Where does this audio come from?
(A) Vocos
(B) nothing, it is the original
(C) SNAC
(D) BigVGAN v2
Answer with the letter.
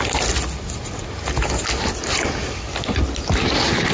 B